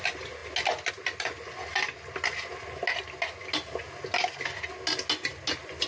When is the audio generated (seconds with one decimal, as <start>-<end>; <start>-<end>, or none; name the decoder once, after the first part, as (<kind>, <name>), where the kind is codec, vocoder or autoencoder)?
none